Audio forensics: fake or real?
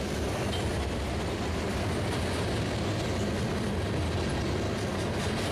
real